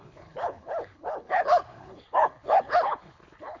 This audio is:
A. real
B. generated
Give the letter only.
B